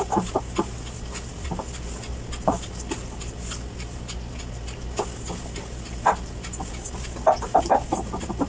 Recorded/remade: recorded